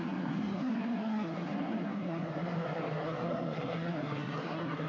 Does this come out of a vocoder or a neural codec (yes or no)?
yes